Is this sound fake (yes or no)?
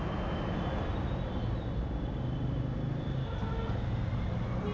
no